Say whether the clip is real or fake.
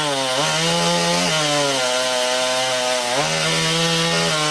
real